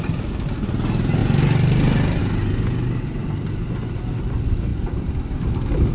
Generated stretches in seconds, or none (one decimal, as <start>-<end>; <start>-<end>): none